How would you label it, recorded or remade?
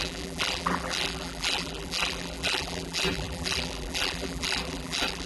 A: remade